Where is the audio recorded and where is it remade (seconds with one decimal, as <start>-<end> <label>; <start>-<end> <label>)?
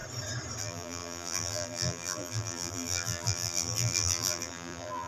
0.0-0.6 recorded; 0.6-5.1 remade